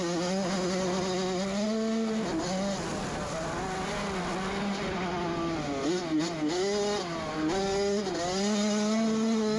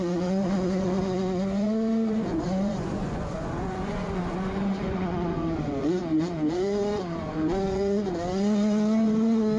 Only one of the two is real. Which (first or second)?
first